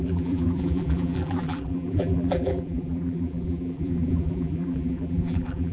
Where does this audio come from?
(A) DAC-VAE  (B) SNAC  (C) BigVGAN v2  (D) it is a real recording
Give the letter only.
C